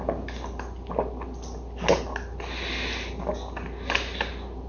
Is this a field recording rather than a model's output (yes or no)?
yes